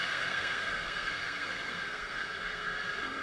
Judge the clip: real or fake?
fake